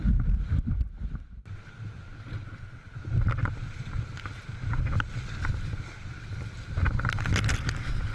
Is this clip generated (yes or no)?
no